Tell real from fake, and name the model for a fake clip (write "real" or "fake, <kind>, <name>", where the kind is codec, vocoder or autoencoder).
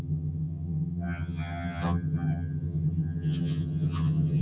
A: fake, vocoder, HiFi-GAN